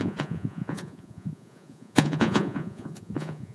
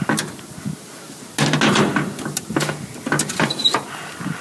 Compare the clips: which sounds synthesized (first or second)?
first